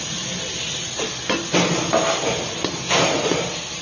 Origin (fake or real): real